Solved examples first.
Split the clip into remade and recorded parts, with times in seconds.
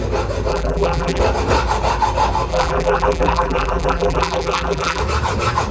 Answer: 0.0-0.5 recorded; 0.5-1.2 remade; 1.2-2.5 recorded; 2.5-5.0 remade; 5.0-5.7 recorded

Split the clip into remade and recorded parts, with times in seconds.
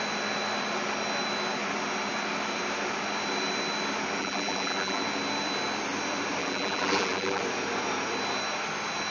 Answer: 0.0-4.2 recorded; 4.2-5.0 remade; 5.0-6.4 recorded; 6.4-7.4 remade; 7.4-9.1 recorded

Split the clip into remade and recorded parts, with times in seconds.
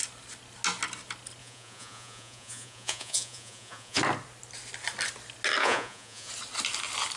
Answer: 0.0-1.4 recorded; 1.4-4.0 remade; 4.0-5.6 recorded; 5.6-6.3 remade; 6.3-7.2 recorded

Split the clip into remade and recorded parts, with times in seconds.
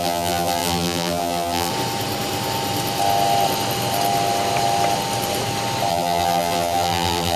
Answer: 0.0-1.7 remade; 1.7-5.9 recorded; 5.9-7.4 remade